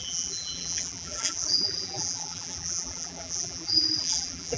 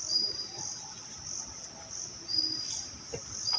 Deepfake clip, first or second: first